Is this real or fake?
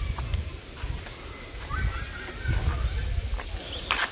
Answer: real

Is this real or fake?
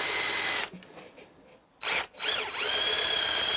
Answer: real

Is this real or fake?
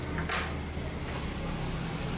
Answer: real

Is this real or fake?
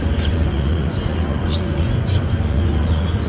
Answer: fake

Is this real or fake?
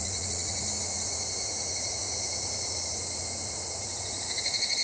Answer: fake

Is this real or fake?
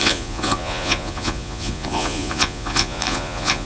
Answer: fake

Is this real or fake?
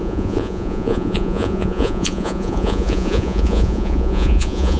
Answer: fake